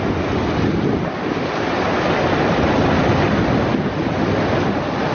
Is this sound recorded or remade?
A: recorded